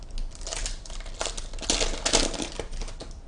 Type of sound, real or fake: real